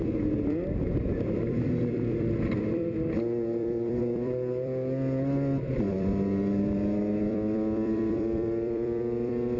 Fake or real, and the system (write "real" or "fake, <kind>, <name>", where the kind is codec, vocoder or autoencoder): fake, vocoder, BigVGAN v2